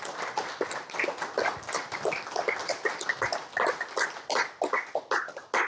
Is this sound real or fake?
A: real